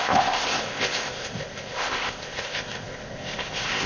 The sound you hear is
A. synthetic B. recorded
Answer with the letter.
A